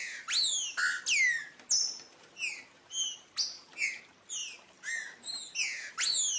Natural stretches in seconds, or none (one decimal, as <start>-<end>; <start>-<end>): 0.0-6.4